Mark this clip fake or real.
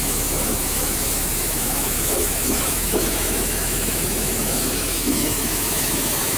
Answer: fake